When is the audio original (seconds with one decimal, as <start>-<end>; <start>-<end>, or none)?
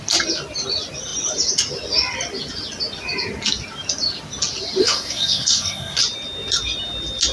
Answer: 0.0-4.8; 6.0-7.3